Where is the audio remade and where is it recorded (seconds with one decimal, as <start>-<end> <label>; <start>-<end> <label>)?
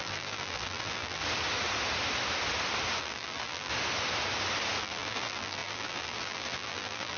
0.0-1.2 remade; 1.2-3.0 recorded; 3.0-3.7 remade; 3.7-4.8 recorded; 4.8-7.2 remade